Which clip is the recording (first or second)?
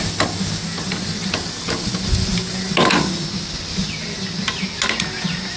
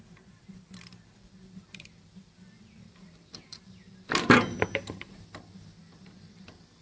first